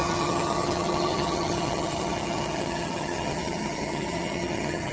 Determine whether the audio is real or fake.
fake